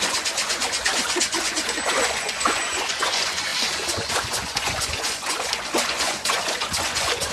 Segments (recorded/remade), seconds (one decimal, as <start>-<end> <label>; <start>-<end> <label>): 0.0-7.3 remade